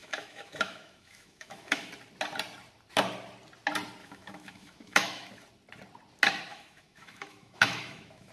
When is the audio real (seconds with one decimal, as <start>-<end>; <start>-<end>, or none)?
1.9-4.0; 5.3-6.5